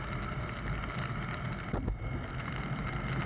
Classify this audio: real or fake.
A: real